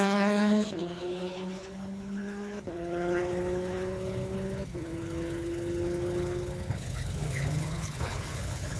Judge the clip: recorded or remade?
remade